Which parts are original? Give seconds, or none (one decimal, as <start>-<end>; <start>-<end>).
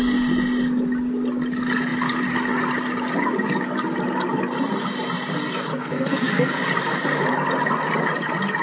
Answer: 0.0-5.7; 6.6-8.6